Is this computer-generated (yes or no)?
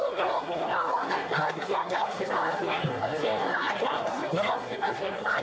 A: yes